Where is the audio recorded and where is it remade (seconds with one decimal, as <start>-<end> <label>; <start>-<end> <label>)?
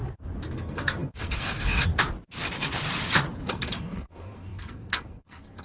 0.0-0.5 recorded; 0.5-1.9 remade; 1.9-3.5 recorded; 3.5-5.6 remade